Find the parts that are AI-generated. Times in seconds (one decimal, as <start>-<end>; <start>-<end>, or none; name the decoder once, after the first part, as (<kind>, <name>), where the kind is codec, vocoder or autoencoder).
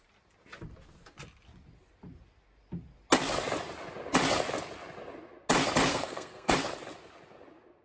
5.9-6.5 (codec, SNAC)